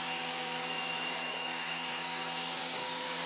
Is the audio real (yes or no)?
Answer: no